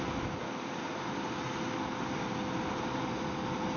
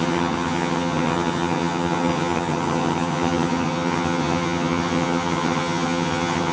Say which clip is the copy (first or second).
second